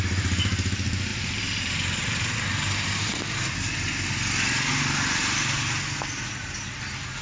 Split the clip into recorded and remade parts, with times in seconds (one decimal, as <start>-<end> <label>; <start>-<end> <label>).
0.0-7.2 recorded